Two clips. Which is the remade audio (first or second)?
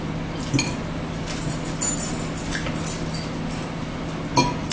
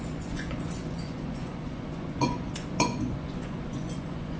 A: second